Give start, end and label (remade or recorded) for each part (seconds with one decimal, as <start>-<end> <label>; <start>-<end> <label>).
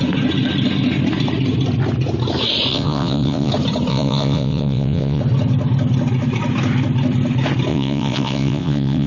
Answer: 0.0-2.7 recorded; 2.7-3.5 remade; 3.5-3.9 recorded; 3.9-5.2 remade; 5.2-7.7 recorded; 7.7-9.1 remade